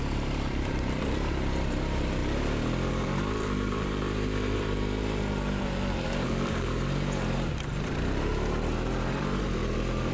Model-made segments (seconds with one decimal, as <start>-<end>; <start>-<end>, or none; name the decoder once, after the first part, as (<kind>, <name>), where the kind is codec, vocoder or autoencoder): 0.0-2.2 (vocoder, BigVGAN v2); 2.9-10.1